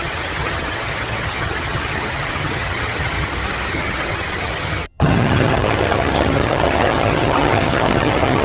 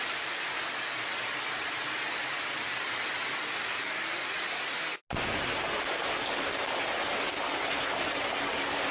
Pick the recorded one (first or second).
second